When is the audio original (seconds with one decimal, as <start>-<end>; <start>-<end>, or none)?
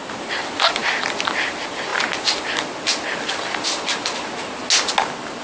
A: 0.0-5.4